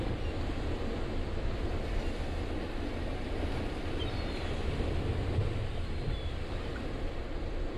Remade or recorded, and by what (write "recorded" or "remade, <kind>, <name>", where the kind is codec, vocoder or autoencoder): recorded